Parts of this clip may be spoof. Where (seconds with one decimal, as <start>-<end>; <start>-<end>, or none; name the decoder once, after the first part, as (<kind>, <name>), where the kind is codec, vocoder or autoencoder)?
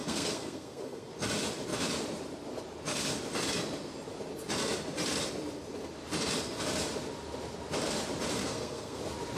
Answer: 0.0-1.1 (codec, SNAC); 8.4-9.0